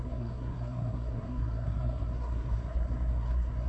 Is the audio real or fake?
fake